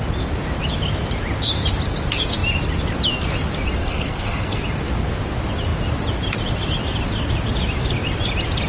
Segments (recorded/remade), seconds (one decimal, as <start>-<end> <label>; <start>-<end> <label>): 0.0-3.8 recorded; 3.8-4.6 remade; 4.6-8.7 recorded